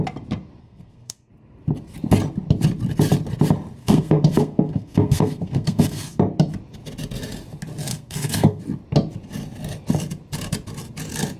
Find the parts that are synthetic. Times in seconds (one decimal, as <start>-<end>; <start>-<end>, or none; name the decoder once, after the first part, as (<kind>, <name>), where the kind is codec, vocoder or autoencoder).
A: 0.6-1.3 (codec, SNAC); 3.8-6.2; 7.9-8.6